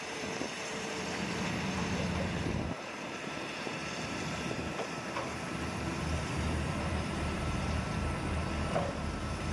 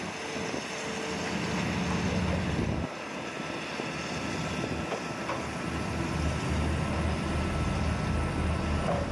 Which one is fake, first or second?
first